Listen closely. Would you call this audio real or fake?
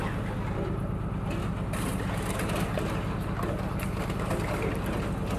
real